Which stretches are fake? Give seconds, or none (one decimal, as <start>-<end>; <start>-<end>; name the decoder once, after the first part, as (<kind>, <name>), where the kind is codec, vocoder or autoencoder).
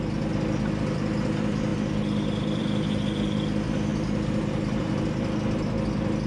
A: none